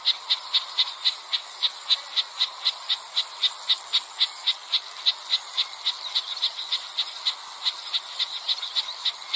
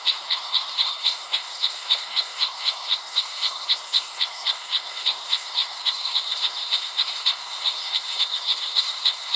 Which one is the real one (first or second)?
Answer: first